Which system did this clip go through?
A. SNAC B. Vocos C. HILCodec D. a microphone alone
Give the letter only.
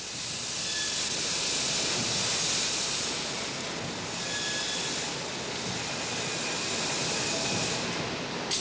D